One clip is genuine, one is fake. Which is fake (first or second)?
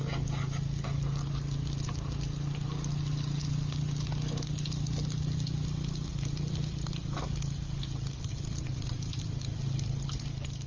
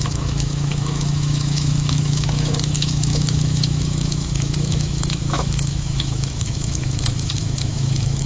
second